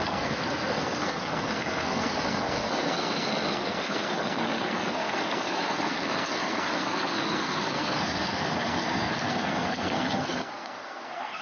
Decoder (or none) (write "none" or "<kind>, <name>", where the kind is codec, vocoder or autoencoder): codec, SNAC